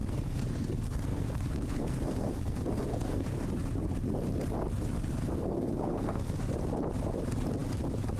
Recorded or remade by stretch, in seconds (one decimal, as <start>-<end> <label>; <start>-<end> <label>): 0.0-3.5 remade; 3.5-5.3 recorded; 5.3-6.4 remade; 6.4-8.2 recorded